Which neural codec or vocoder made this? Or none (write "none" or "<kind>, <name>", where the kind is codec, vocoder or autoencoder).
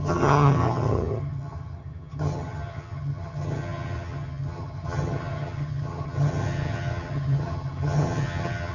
vocoder, HiFi-GAN